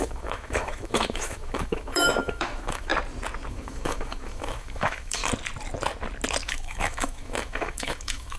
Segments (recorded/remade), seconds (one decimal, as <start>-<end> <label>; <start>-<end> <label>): 0.0-2.9 remade; 2.9-3.5 recorded; 3.5-5.2 remade; 5.2-6.4 recorded; 6.4-8.4 remade